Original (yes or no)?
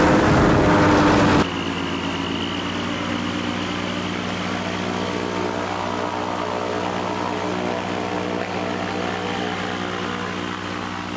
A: yes